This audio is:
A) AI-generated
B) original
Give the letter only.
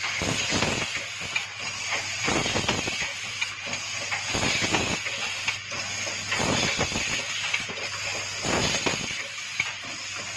B